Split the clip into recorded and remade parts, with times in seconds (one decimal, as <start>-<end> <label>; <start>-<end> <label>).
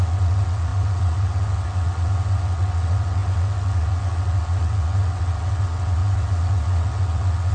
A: 0.0-7.5 remade